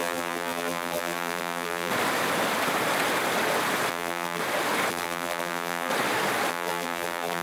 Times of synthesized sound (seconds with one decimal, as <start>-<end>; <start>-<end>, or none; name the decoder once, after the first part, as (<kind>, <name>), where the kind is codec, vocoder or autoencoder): 0.0-1.9 (vocoder, BigVGAN v2); 3.9-4.4; 4.9-5.9; 6.5-7.4